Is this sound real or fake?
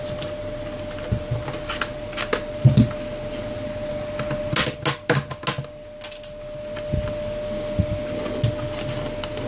real